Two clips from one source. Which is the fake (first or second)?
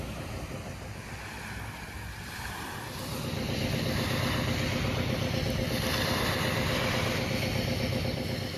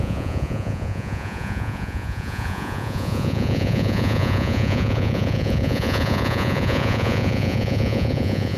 second